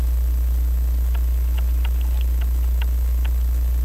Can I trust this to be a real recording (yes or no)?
yes